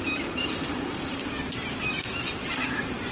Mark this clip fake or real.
fake